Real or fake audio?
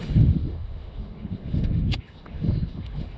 fake